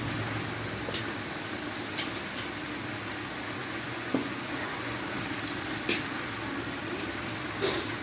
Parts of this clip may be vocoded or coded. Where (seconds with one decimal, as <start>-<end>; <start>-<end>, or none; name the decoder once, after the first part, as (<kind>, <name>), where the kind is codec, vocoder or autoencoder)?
3.6-5.0 (vocoder, Vocos)